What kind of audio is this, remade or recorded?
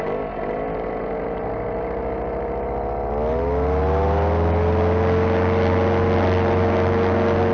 recorded